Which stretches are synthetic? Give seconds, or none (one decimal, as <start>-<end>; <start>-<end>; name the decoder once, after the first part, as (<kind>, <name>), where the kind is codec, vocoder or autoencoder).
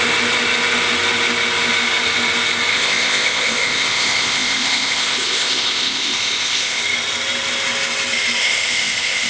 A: 2.7-6.8 (codec, ZipCodec); 8.4-9.3